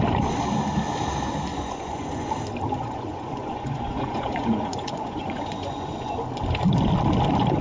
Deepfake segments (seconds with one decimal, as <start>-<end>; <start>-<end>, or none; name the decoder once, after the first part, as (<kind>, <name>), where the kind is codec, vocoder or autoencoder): 1.5-2.3 (vocoder, Vocos); 2.8-6.2